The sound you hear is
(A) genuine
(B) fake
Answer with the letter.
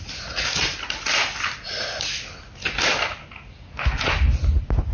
A